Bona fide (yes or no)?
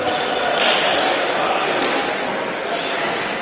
yes